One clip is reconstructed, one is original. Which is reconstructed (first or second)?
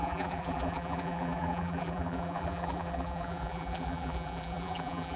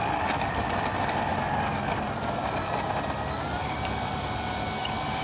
first